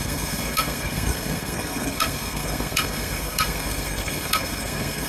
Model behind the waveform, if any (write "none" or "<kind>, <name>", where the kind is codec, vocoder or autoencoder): codec, SNAC